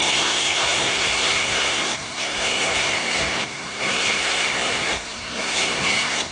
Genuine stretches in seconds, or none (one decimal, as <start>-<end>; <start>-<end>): none